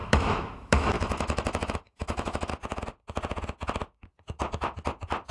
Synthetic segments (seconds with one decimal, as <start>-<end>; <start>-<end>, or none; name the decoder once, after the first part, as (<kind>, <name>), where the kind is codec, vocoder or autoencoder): 0.0-2.5 (autoencoder, DAC-VAE)